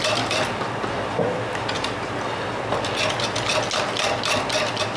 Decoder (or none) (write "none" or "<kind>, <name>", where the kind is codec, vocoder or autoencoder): none